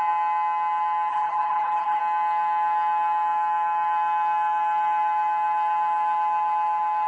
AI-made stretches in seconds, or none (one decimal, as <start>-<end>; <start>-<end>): 1.1-2.0